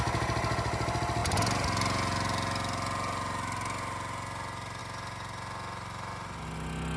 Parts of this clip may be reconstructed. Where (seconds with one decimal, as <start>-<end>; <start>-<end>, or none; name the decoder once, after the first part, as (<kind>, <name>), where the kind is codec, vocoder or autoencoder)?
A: none